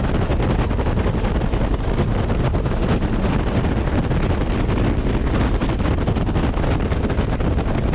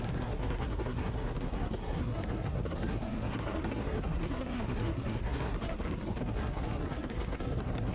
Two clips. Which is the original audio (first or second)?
first